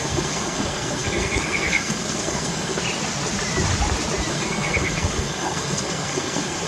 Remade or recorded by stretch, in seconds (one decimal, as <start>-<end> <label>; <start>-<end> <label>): 0.0-2.8 remade; 2.8-4.3 recorded; 4.3-6.7 remade